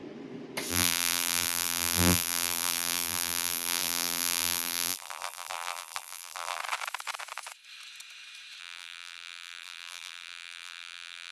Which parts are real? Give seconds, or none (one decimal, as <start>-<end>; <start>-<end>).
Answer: 0.0-0.7; 6.6-8.6